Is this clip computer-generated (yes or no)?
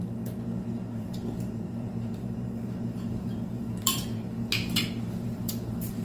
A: yes